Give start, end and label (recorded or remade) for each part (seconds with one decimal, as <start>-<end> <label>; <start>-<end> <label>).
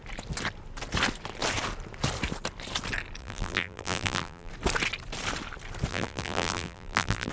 0.0-3.2 recorded; 3.2-4.5 remade; 4.5-5.9 recorded; 5.9-7.3 remade